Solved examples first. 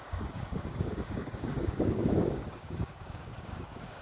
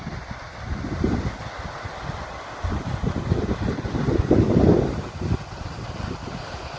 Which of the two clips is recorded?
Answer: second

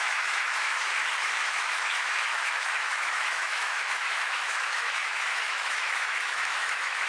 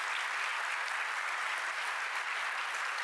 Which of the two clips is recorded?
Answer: second